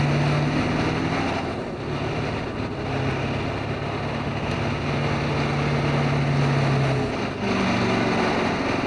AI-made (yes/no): no